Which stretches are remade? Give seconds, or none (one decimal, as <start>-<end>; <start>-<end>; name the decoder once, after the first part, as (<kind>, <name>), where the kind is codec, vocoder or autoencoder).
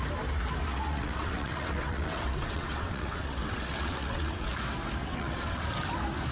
0.7-4.5 (vocoder, WaveNeXt); 5.0-5.6